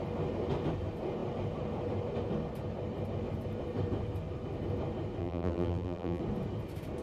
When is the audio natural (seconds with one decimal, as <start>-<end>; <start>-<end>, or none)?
0.0-5.2; 6.2-7.0